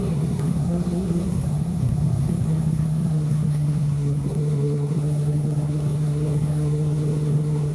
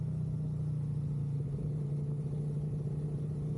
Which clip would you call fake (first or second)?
first